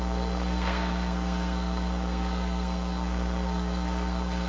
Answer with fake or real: fake